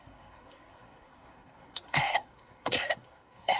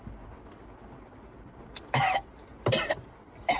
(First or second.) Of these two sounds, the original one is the second